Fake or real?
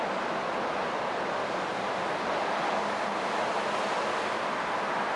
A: real